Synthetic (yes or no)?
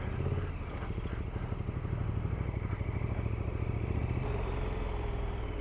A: no